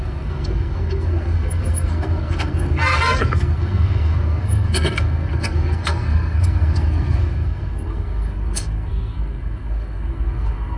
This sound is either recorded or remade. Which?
remade